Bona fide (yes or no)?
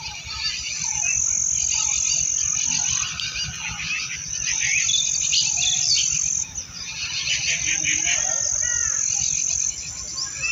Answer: yes